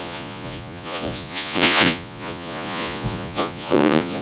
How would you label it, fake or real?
fake